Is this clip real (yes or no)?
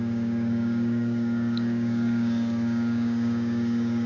no